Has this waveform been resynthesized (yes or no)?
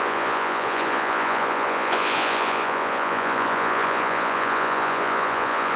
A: yes